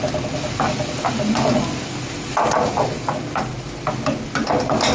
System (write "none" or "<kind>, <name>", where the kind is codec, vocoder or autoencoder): none